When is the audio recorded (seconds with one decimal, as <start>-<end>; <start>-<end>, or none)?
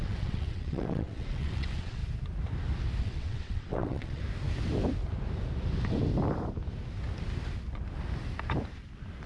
2.0-3.0; 4.2-9.3